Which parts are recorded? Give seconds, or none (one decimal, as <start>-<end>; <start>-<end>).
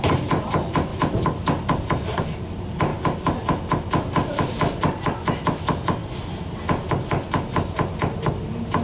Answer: 0.0-8.8